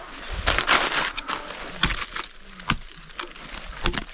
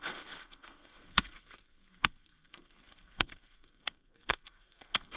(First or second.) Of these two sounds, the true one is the first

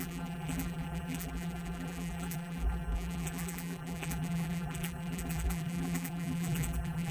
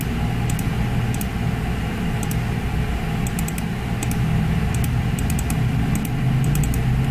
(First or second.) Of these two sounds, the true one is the second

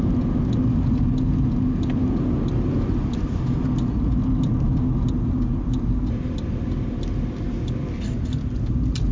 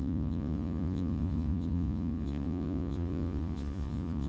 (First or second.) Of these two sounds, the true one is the first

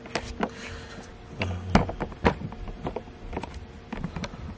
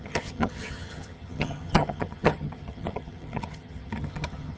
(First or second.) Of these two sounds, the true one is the first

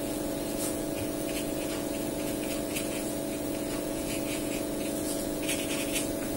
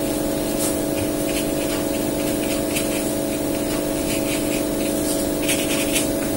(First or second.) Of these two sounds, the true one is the second